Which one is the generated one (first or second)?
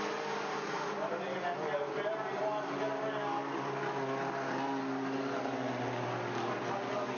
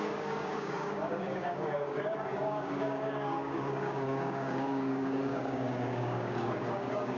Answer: second